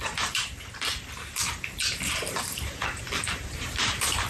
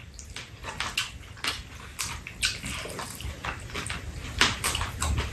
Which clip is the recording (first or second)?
second